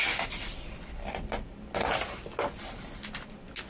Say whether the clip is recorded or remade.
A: recorded